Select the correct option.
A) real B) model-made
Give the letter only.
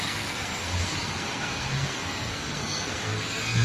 B